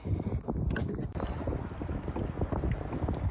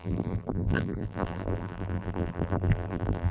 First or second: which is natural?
first